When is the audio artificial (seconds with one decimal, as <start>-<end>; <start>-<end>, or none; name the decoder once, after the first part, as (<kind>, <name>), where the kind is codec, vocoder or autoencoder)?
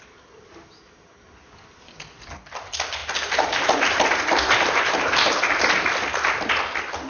none